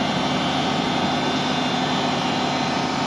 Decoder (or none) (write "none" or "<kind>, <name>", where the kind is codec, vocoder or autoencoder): none